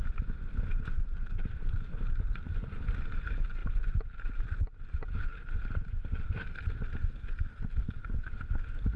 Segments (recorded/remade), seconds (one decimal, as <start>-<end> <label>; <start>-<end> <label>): 0.0-3.6 remade; 3.6-9.0 recorded